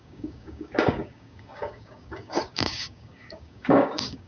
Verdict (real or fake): fake